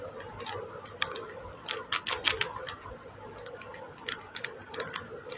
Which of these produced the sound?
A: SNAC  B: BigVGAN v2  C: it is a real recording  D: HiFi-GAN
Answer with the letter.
C